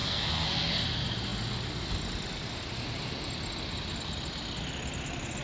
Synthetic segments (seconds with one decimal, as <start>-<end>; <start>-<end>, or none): 0.0-0.7